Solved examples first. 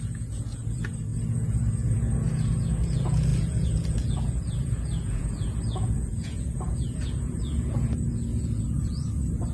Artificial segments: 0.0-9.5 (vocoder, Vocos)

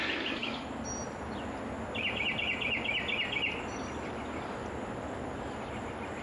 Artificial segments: none

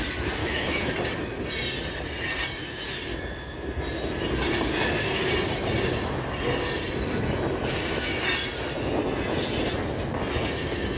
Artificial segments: 0.4-0.9 (autoencoder, DAC-VAE)

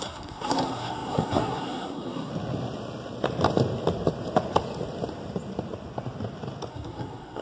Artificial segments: 0.0-2.3 (codec, SNAC); 6.7-7.4

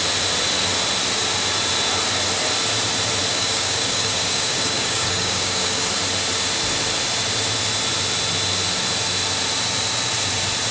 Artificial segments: 3.3-5.9 (codec, DAC)

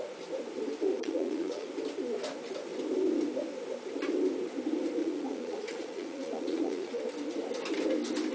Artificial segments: 0.9-1.7 (vocoder, Vocos); 5.0-7.0

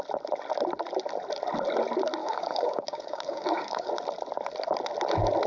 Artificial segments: 2.2-3.9 (codec, DAC)

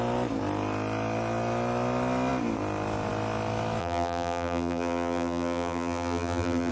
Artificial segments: 3.8-6.7 (vocoder, BigVGAN v2)